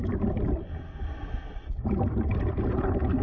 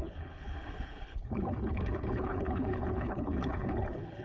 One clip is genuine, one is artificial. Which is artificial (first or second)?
second